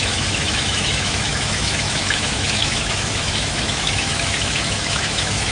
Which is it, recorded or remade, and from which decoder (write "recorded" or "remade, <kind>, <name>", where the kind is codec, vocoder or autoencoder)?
remade, autoencoder, DAC-VAE